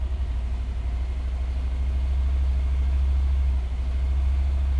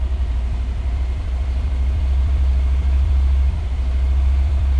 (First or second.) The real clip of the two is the first